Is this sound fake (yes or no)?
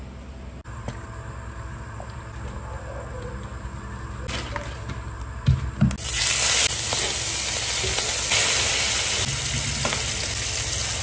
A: no